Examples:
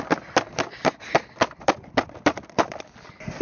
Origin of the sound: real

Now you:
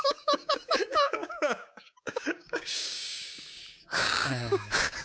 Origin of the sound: fake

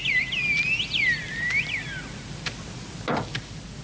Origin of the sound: real